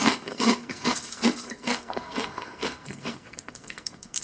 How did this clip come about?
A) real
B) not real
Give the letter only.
B